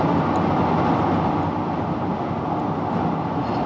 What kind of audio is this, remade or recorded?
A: recorded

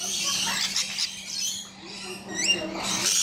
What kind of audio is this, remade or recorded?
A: remade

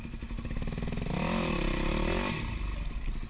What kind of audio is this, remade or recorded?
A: recorded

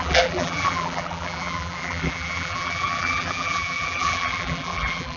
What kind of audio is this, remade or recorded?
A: remade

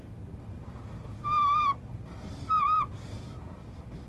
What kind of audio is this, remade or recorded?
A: remade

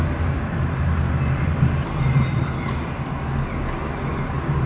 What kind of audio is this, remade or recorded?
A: recorded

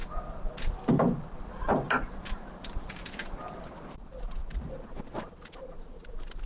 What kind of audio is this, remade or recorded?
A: remade